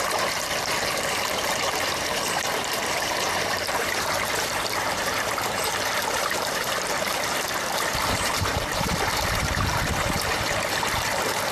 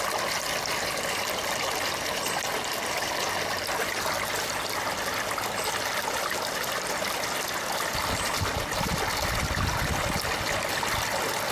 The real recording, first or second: second